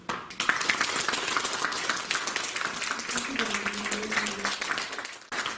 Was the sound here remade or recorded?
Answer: recorded